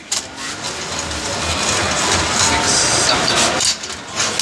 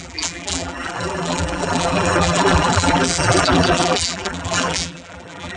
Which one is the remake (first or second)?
second